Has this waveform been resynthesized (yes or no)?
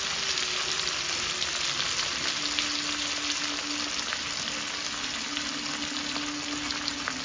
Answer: no